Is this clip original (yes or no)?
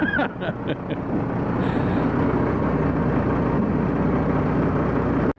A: yes